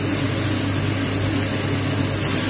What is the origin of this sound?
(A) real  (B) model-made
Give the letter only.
A